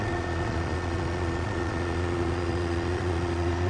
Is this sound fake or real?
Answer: fake